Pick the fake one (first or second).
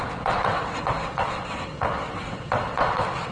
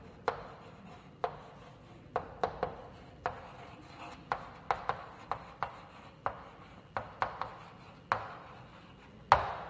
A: first